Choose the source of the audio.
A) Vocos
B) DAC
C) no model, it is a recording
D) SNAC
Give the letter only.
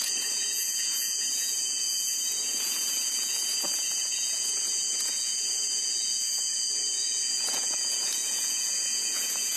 A